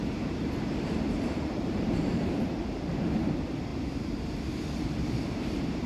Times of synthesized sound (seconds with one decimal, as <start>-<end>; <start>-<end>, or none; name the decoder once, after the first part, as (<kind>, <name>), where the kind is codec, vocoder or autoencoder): 0.0-3.7 (vocoder, BigVGAN v2); 4.8-5.9